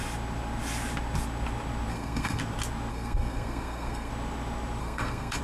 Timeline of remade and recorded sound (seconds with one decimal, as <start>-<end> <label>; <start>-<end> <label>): 0.0-1.9 recorded; 1.9-2.4 remade; 2.4-2.9 recorded; 2.9-4.1 remade; 4.1-4.8 recorded; 4.8-5.4 remade